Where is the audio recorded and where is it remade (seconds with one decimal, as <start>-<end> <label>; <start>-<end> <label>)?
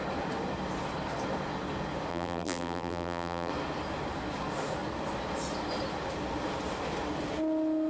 0.0-2.1 recorded; 2.1-3.5 remade; 3.5-7.9 recorded